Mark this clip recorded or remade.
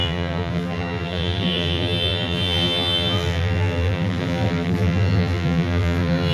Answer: remade